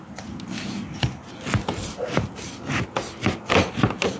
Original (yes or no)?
yes